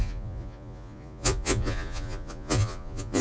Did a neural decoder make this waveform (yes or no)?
yes